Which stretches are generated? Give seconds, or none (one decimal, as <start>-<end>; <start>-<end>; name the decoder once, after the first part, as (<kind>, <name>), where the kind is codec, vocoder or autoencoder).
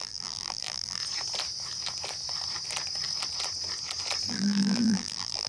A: 0.0-1.0 (vocoder, BigVGAN v2); 4.3-5.5